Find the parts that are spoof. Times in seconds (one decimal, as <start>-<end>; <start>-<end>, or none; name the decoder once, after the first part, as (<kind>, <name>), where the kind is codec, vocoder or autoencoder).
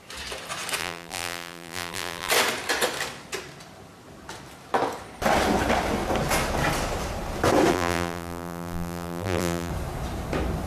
0.8-2.3 (vocoder, BigVGAN v2); 7.7-9.7